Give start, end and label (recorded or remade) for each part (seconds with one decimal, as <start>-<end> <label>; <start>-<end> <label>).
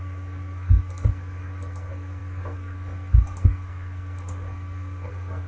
0.0-5.5 remade